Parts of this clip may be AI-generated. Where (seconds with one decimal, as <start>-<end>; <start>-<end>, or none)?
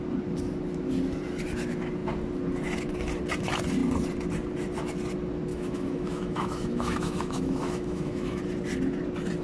5.5-8.4